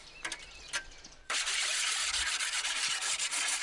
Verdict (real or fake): fake